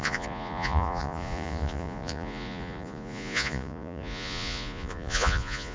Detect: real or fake fake